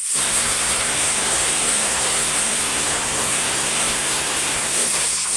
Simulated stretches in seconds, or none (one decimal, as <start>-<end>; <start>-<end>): 0.0-5.4